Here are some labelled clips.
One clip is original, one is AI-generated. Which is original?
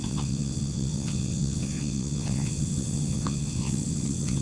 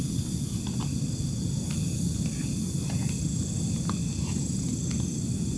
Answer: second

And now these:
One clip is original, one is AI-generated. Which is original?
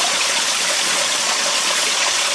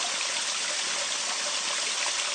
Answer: second